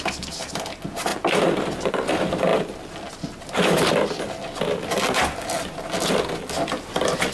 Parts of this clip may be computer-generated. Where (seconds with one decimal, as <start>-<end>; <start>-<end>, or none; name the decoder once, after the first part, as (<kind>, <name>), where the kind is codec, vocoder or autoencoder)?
none